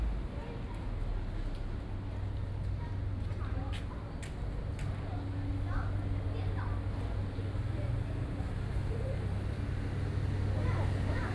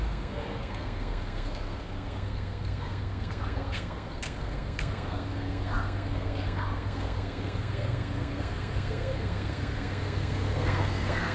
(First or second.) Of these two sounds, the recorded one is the first